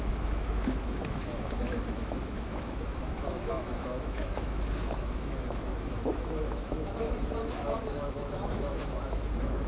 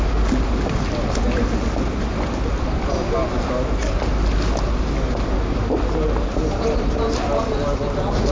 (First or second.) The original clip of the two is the second